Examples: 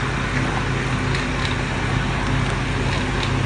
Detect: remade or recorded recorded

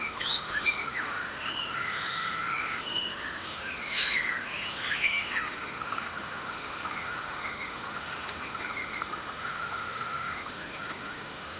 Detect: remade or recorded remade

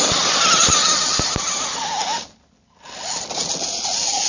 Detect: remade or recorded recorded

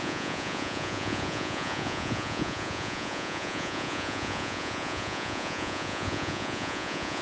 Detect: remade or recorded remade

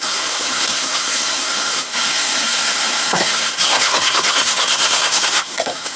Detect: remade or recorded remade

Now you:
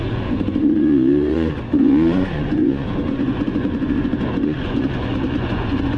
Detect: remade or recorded remade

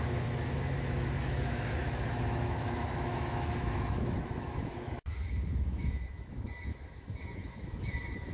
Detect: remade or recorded remade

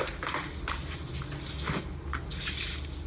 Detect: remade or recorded recorded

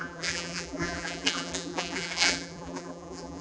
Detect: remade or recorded remade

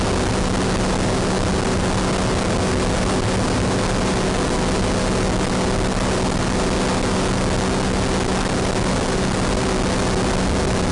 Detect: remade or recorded recorded